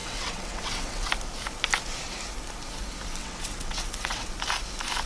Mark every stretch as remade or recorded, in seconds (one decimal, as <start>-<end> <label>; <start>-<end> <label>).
0.0-1.1 remade; 1.1-3.2 recorded; 3.2-4.3 remade; 4.3-5.1 recorded